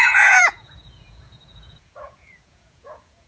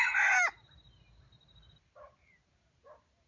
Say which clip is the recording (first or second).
second